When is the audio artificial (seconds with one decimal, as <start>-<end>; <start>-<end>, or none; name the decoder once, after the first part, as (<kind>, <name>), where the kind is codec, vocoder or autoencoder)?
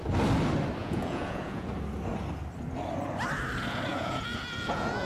0.8-1.7 (vocoder, Vocos); 3.9-5.1